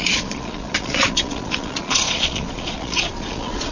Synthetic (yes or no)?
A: yes